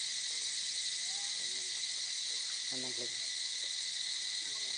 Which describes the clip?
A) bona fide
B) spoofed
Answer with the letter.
A